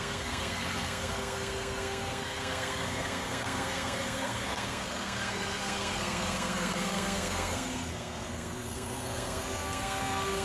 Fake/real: fake